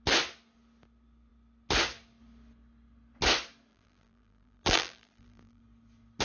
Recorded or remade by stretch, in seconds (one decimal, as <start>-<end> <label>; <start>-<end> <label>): 0.0-3.7 recorded; 3.7-5.6 remade; 5.6-6.2 recorded

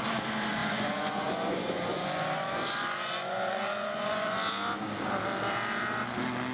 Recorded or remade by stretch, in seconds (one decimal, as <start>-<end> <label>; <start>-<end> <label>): 0.0-0.6 recorded; 0.6-4.5 remade; 4.5-6.5 recorded